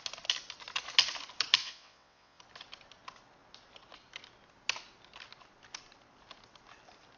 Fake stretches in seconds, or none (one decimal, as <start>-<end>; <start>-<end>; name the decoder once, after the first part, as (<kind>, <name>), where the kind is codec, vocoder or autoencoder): 1.6-2.4 (vocoder, WaveNeXt)